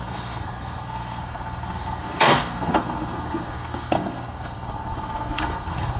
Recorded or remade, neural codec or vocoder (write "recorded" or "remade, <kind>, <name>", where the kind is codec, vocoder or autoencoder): remade, codec, SNAC